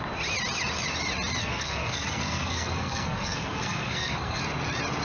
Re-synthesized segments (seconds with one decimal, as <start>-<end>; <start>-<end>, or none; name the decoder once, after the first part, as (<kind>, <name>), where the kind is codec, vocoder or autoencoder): 1.4-4.4 (codec, SNAC)